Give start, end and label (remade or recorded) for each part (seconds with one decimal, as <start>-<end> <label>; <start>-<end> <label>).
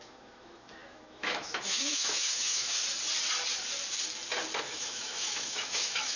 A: 0.0-2.8 remade; 2.8-4.6 recorded; 4.6-6.2 remade